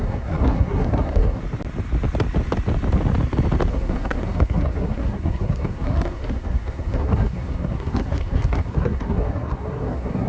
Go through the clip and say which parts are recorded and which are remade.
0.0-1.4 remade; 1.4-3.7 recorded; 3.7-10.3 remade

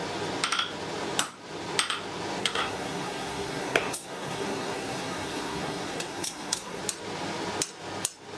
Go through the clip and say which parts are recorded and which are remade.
0.0-2.4 recorded; 2.4-6.8 remade; 6.8-8.4 recorded

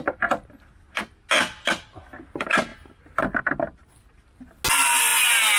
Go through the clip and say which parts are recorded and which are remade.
0.0-5.6 recorded

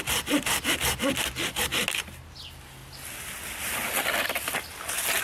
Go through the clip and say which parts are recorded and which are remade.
0.0-5.2 recorded

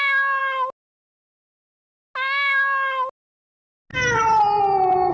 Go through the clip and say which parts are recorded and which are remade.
0.0-5.1 recorded

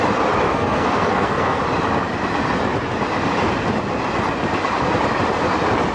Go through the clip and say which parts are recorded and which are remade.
0.0-0.5 recorded; 0.5-1.6 remade; 1.6-5.9 recorded

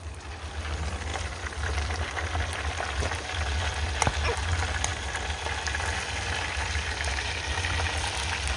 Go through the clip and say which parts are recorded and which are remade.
0.0-8.6 recorded

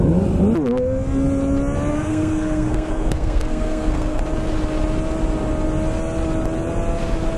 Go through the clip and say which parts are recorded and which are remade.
0.0-1.9 recorded; 1.9-4.2 remade; 4.2-7.4 recorded